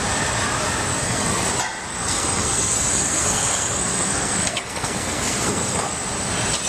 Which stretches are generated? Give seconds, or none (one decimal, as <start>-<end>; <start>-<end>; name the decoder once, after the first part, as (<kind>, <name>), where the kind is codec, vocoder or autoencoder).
0.9-1.5 (codec, SNAC); 1.9-5.9